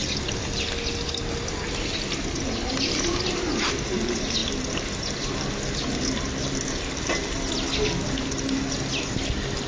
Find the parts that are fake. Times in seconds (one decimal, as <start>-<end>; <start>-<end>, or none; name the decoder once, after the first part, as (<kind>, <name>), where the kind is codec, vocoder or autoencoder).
none